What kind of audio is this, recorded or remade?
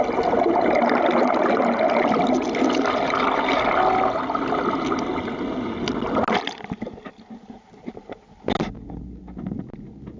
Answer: recorded